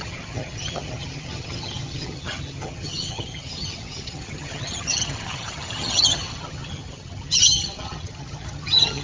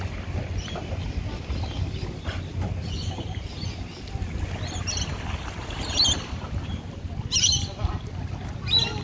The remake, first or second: first